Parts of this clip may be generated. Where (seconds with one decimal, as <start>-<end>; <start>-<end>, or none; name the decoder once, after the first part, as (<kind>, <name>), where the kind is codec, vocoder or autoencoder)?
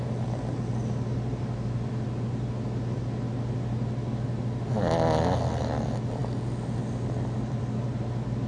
none